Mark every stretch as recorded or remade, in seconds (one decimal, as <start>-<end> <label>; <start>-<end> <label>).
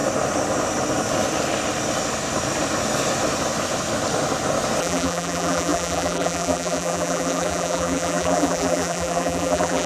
0.0-4.8 recorded; 4.8-9.9 remade